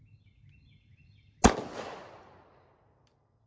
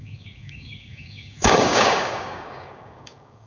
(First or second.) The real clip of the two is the first